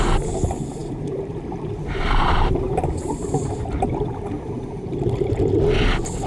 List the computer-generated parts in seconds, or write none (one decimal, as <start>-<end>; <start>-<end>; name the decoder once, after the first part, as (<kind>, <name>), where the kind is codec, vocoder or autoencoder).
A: 0.8-4.6 (vocoder, BigVGAN v2)